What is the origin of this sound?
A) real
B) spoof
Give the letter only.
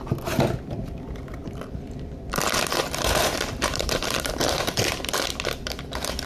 B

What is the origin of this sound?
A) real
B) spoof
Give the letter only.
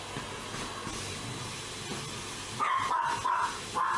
A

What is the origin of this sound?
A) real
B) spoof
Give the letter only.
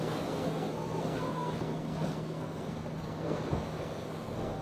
B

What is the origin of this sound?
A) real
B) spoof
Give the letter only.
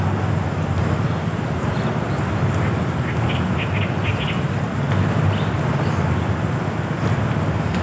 A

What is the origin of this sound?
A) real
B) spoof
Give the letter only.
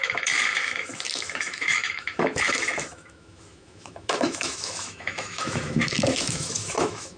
B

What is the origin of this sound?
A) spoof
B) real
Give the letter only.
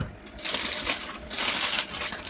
B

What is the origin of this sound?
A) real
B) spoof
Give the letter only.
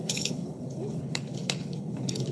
B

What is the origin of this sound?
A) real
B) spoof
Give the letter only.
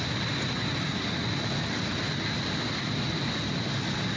B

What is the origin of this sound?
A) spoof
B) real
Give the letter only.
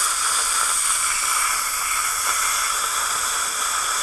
B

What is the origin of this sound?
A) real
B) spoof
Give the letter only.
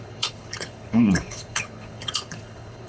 B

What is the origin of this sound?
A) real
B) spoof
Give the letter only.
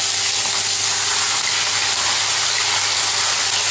A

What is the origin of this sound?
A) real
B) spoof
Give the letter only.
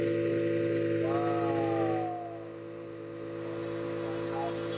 A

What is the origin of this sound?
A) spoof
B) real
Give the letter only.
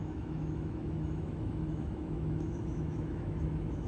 A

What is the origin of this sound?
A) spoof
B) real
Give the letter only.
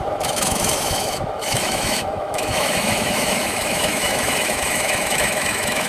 A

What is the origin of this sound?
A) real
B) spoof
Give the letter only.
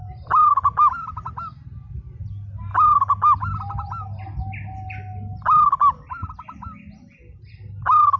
A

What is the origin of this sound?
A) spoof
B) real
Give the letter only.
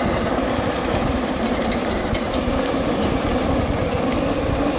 B